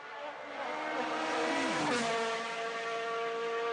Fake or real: real